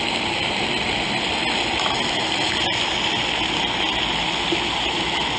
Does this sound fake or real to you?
real